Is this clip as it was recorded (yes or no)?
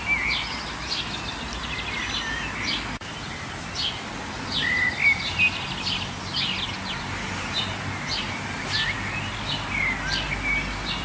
yes